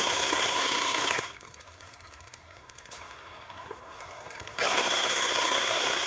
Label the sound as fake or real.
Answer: fake